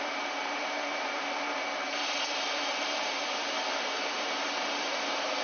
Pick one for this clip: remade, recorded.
remade